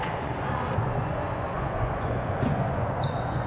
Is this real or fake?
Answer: fake